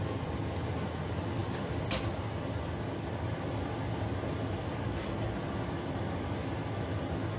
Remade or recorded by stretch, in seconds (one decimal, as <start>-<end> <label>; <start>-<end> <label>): 0.0-7.4 recorded